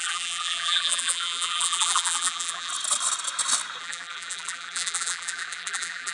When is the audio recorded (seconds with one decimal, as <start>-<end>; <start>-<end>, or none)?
2.7-3.8